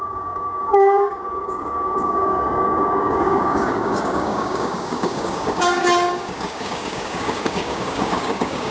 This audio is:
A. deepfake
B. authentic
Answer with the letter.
A